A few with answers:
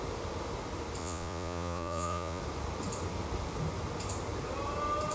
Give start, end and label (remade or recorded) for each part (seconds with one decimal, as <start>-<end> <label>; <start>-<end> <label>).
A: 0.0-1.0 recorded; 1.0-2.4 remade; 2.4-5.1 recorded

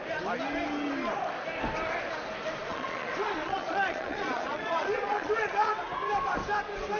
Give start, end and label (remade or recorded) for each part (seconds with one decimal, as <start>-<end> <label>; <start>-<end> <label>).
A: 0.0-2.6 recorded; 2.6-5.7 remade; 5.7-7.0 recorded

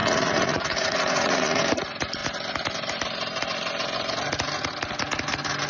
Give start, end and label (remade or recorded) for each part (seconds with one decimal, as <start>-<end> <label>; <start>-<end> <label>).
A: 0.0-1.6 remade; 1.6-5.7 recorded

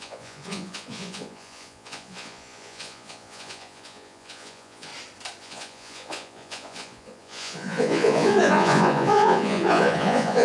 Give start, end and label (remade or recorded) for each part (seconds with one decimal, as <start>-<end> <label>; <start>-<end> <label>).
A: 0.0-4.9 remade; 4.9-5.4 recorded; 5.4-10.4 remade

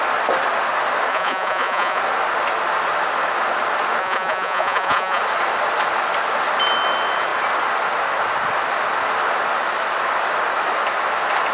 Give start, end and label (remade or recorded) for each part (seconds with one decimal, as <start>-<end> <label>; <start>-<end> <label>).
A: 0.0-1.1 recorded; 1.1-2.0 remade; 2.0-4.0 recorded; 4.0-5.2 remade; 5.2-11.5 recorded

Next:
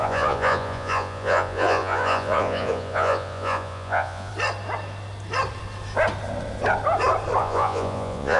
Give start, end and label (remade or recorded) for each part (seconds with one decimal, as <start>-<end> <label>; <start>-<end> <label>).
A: 0.0-4.3 remade; 4.3-7.4 recorded; 7.4-8.4 remade